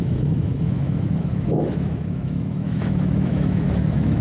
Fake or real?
fake